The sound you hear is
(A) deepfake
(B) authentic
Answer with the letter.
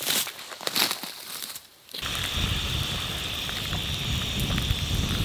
A